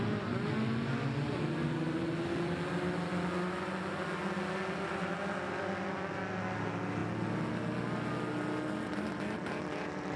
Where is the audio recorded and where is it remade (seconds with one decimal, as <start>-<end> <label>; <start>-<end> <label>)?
0.0-10.2 recorded